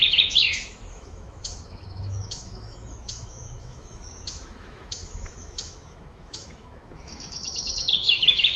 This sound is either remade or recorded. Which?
remade